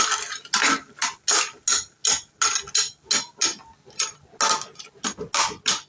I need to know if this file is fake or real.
real